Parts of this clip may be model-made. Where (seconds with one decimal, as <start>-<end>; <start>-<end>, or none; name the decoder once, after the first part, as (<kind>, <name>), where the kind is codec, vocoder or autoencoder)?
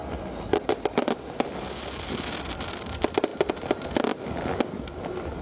none